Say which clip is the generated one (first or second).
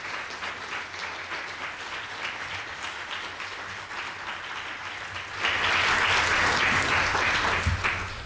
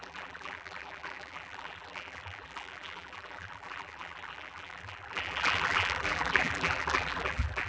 second